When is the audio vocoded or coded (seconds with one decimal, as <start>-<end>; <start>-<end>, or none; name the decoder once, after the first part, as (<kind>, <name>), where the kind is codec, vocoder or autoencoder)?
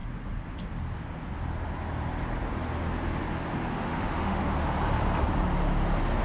3.7-4.4 (autoencoder, DAC-VAE)